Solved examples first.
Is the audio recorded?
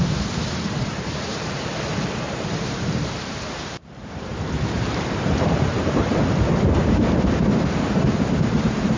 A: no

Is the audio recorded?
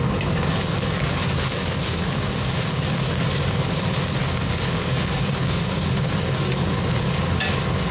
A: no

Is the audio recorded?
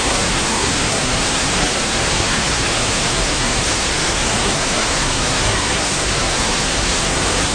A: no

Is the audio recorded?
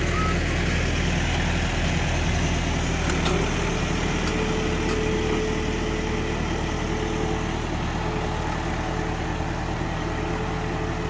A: yes